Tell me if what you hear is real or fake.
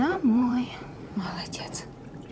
fake